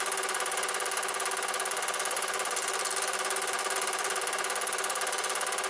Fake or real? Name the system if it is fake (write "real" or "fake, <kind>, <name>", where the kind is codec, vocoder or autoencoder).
real